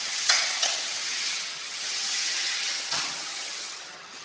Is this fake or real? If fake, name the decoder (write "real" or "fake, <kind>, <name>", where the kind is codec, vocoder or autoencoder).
fake, vocoder, HiFi-GAN